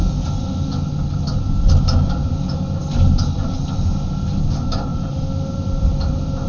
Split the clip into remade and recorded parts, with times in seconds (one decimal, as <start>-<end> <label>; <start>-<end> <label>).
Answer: 0.0-4.9 recorded; 4.9-6.5 remade